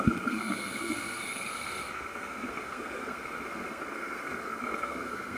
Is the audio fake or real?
fake